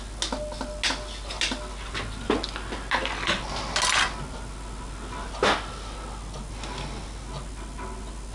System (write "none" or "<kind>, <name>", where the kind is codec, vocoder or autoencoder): none